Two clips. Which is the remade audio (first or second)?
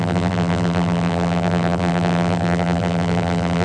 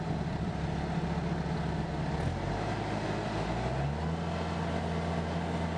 first